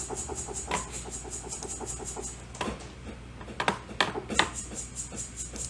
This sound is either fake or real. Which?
real